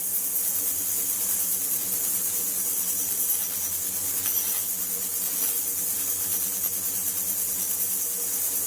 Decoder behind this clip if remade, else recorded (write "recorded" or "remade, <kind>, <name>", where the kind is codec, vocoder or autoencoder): recorded